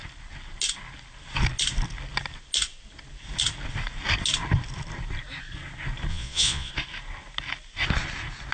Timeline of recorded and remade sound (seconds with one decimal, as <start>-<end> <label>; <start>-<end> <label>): 0.0-6.1 recorded; 6.1-6.7 remade; 6.7-8.5 recorded